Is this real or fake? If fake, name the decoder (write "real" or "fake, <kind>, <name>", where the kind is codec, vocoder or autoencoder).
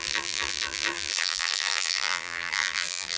fake, vocoder, BigVGAN v2